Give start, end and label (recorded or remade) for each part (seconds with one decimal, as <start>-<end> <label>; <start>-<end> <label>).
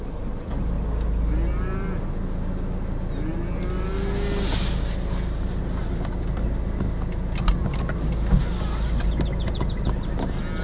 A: 0.0-10.6 recorded